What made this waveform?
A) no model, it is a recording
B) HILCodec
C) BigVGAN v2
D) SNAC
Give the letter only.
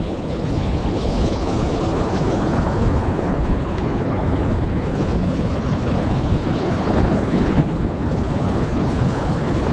B